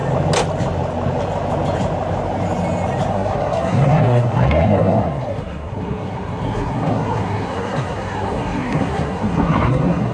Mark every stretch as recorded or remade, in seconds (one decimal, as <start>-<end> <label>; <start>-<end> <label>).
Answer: 0.0-3.1 recorded; 3.1-10.1 remade